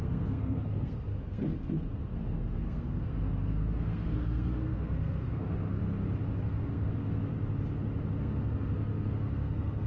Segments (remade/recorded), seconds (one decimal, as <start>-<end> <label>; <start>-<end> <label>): 0.0-5.8 remade; 5.8-6.4 recorded; 6.4-7.3 remade; 7.3-8.2 recorded; 8.2-9.9 remade